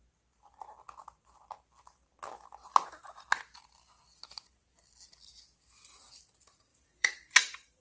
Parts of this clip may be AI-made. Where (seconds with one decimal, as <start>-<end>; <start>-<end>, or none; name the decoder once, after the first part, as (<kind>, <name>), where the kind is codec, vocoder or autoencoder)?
6.7-7.8 (vocoder, BigVGAN v2)